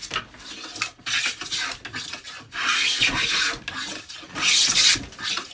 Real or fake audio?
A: real